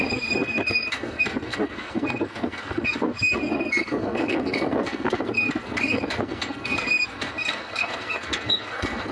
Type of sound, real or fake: fake